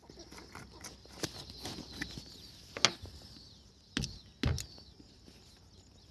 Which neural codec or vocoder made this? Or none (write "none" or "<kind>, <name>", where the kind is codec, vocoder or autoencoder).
none